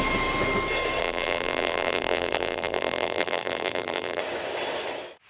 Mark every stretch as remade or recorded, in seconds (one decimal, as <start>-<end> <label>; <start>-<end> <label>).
0.0-1.0 recorded; 1.0-4.2 remade; 4.2-5.3 recorded